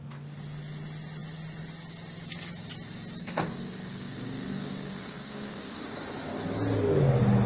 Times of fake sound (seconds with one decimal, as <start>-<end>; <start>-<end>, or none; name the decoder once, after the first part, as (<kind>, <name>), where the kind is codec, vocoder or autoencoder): 3.2-5.8 (codec, SNAC)